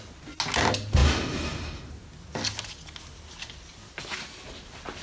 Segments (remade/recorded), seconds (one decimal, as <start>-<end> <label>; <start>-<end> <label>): 0.0-5.0 recorded